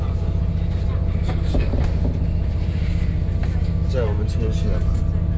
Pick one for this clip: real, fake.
real